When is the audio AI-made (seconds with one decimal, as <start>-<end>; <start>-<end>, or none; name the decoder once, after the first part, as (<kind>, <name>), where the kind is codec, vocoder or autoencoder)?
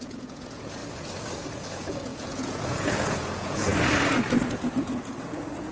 0.0-0.8 (vocoder, Vocos); 1.5-3.7; 4.5-5.7